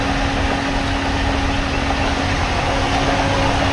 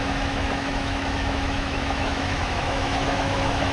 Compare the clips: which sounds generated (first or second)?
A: second